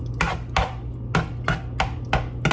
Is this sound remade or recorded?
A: recorded